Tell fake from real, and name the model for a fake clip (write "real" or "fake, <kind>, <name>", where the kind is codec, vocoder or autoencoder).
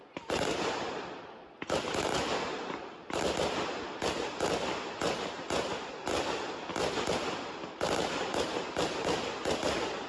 real